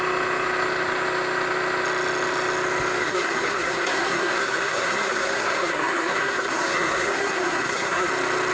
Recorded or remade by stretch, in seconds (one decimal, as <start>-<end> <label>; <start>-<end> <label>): 0.0-3.0 recorded; 3.0-8.1 remade; 8.1-8.5 recorded